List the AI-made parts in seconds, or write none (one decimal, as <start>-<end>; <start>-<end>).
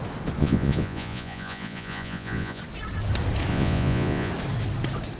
0.4-2.6; 3.5-4.3